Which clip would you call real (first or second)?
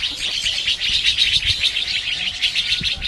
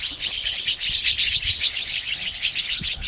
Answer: first